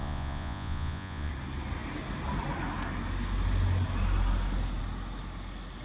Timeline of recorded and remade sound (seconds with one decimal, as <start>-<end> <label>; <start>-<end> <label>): 0.0-1.3 remade; 1.3-5.8 recorded